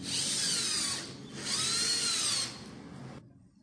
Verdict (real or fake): real